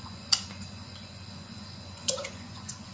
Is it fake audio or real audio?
fake